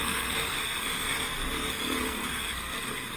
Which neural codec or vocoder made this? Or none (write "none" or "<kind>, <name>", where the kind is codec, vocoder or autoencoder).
codec, SNAC